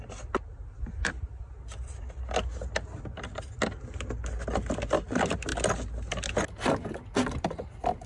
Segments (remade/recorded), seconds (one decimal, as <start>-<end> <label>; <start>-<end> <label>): 0.0-8.1 recorded